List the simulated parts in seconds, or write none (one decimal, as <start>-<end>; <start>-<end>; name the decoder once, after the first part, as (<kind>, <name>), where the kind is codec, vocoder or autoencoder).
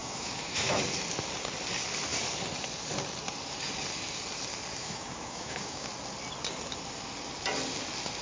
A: 0.0-0.8 (autoencoder, DAC-VAE); 4.8-5.9